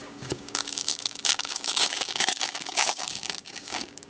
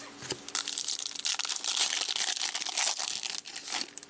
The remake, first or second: first